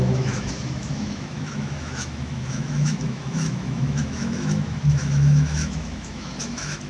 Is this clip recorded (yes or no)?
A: no